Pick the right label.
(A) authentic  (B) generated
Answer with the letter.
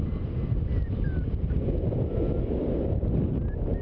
A